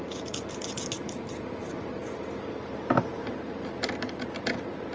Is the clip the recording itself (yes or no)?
yes